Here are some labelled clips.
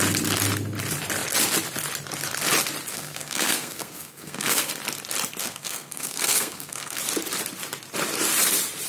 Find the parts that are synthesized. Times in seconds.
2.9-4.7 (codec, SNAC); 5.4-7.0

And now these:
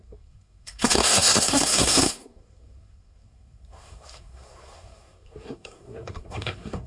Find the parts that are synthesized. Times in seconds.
0.0-6.9 (codec, SNAC)